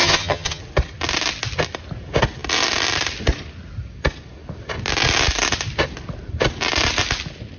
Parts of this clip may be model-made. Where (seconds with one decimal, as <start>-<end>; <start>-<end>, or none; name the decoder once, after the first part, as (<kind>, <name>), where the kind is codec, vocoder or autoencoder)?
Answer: 0.0-0.6 (vocoder, HiFi-GAN)